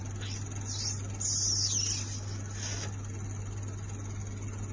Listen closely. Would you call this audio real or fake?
real